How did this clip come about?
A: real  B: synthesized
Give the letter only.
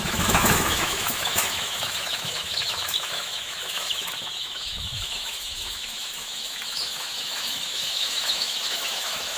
B